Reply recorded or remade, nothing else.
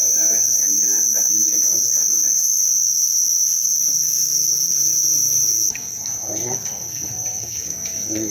remade